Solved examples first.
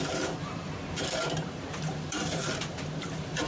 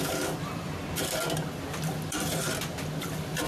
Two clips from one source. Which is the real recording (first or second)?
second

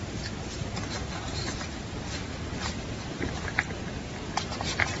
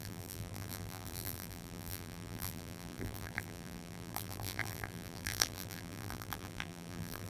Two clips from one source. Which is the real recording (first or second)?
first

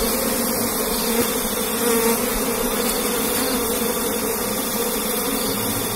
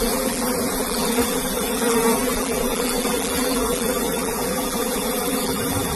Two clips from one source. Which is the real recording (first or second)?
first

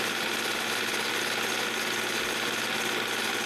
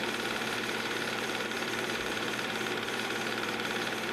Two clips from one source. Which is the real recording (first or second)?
first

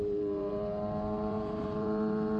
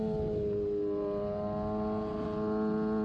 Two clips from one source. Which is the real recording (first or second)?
second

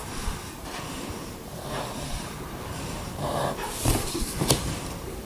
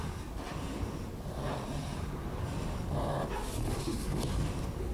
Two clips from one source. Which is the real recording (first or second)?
second